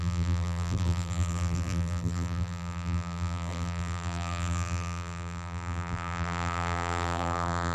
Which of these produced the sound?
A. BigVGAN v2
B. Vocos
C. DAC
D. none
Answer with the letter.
A